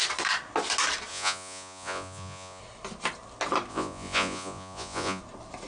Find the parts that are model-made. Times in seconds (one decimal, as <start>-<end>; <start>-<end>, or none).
1.1-2.6; 3.7-5.2